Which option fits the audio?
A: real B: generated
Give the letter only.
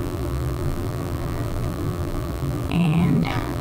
B